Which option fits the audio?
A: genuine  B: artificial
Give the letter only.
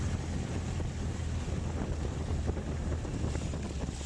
A